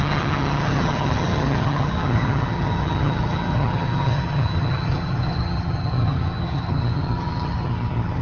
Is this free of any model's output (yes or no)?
no